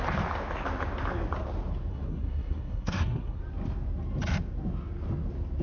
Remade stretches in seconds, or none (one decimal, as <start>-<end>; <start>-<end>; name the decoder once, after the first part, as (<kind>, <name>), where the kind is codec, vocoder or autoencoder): 1.9-3.4 (codec, SNAC)